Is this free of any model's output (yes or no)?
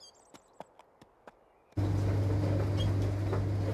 yes